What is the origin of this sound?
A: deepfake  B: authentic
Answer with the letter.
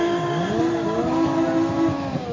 B